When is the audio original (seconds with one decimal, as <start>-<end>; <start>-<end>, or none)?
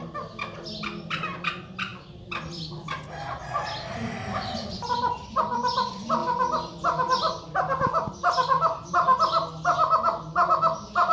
0.0-11.1